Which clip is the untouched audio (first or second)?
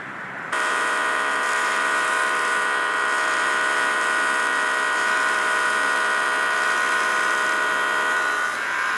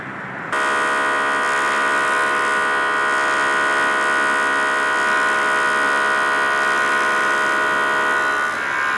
second